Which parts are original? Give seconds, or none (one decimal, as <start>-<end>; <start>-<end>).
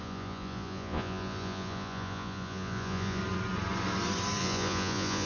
3.2-4.4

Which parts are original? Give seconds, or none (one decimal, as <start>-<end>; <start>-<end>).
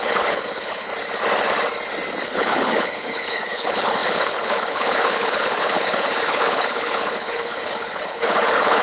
0.9-2.2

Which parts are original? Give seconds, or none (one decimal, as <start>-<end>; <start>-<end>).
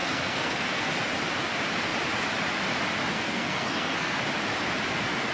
0.9-3.1; 4.2-5.3